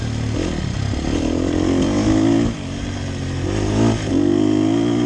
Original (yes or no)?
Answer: yes